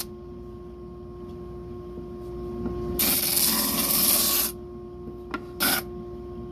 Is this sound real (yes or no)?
yes